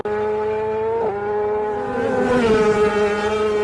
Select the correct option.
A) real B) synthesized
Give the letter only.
A